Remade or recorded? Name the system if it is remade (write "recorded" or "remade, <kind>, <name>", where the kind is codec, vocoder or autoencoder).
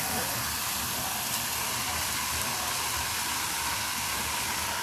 remade, vocoder, BigVGAN v2